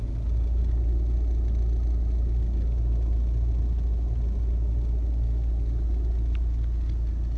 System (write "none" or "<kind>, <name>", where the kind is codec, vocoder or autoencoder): none